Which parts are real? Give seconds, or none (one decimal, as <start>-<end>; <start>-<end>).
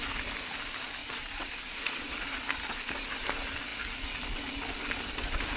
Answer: 0.0-1.0; 2.1-5.6